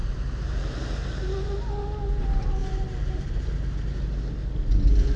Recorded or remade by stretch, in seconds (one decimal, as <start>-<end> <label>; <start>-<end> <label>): 0.0-0.8 remade; 0.8-2.6 recorded; 2.6-3.3 remade; 3.3-5.2 recorded